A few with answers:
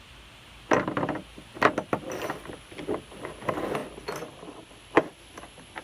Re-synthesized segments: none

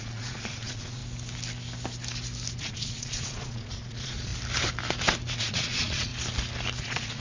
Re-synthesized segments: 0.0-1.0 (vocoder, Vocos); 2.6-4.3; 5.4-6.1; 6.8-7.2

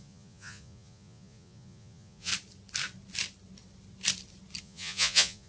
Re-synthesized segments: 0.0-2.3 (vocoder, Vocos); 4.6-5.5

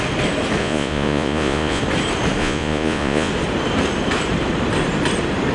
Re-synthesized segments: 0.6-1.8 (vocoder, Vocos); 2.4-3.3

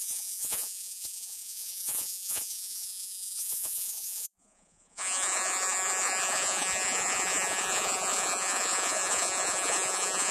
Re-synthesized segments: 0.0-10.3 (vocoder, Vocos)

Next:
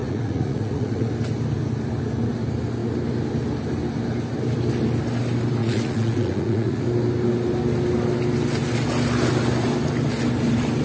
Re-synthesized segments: 0.0-1.1 (vocoder, Vocos); 5.6-6.8

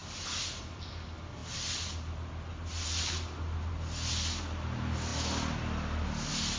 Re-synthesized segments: none

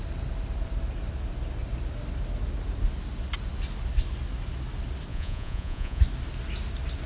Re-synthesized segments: 5.1-6.0 (vocoder, Vocos)